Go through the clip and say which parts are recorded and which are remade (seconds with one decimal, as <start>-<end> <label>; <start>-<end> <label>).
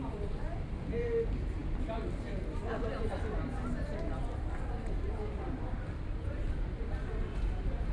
0.0-7.9 recorded